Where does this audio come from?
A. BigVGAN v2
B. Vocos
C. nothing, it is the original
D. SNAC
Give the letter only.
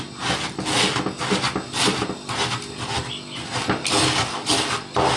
C